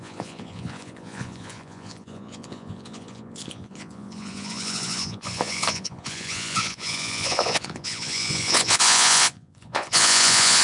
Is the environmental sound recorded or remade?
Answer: remade